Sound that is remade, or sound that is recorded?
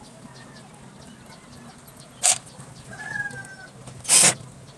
recorded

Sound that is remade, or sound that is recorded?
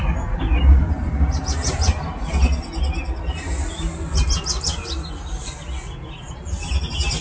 recorded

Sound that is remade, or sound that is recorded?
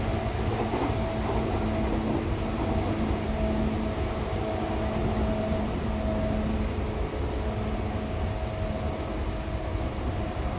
recorded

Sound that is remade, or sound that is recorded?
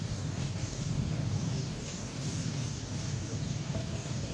remade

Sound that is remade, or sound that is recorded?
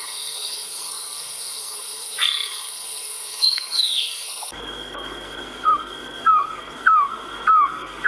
remade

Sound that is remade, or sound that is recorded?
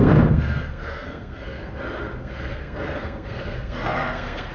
remade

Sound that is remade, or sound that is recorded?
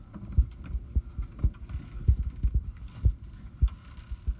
recorded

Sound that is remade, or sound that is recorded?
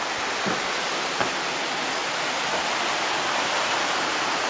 recorded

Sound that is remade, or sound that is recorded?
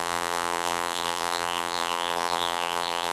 remade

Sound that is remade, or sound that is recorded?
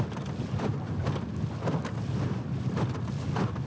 recorded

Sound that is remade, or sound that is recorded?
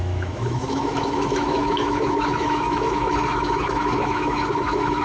remade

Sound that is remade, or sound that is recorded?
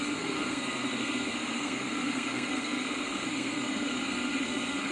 remade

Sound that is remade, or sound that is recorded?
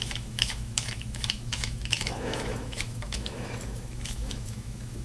remade